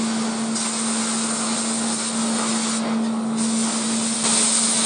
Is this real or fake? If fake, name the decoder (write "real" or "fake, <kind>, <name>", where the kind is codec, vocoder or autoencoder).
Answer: real